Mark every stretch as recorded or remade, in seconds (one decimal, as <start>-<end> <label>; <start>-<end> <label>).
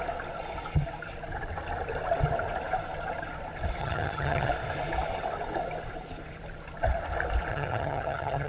0.0-3.8 recorded; 3.8-4.5 remade; 4.5-7.5 recorded; 7.5-8.5 remade